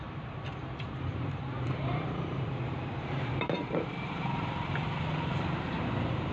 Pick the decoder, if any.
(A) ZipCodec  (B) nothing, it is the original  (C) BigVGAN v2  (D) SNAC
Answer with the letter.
C